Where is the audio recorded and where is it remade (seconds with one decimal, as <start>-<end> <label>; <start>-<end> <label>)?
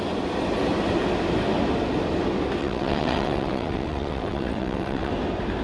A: 0.0-2.6 recorded; 2.6-5.1 remade; 5.1-5.6 recorded